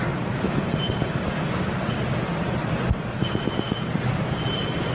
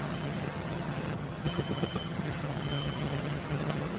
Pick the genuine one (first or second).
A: first